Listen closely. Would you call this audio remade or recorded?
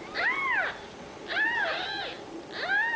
recorded